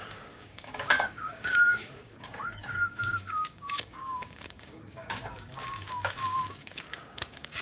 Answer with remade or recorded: remade